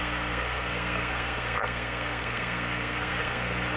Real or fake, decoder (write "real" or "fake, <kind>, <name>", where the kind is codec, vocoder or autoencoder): fake, codec, SNAC